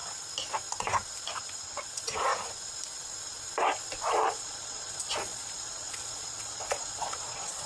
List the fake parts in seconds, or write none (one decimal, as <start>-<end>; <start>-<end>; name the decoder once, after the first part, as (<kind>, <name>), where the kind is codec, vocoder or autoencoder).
1.4-2.3 (vocoder, Vocos); 4.1-7.7